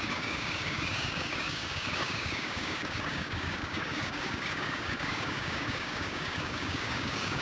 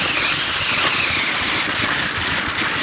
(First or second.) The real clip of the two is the second